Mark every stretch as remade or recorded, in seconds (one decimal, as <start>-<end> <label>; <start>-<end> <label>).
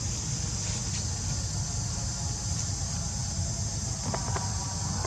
0.0-5.1 recorded